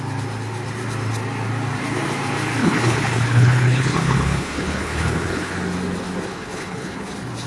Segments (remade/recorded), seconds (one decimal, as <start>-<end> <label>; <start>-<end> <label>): 0.0-2.6 recorded; 2.6-5.5 remade; 5.5-6.3 recorded; 6.3-7.1 remade; 7.1-7.5 recorded

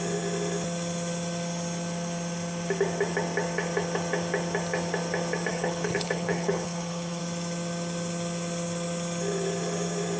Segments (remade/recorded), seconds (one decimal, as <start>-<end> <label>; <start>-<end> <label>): 0.0-5.5 recorded; 5.5-7.2 remade; 7.2-10.2 recorded

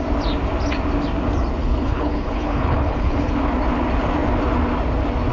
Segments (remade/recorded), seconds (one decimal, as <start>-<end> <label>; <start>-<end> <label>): 0.0-1.6 recorded; 1.6-3.3 remade; 3.3-5.3 recorded

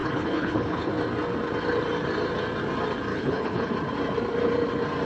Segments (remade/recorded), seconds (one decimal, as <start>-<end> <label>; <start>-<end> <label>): 0.0-0.9 remade; 0.9-3.1 recorded; 3.1-3.7 remade; 3.7-5.0 recorded

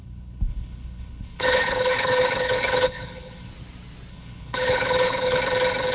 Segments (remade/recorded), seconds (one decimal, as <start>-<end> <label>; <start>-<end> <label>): 0.0-3.5 remade; 3.5-4.1 recorded; 4.1-5.4 remade; 5.4-5.9 recorded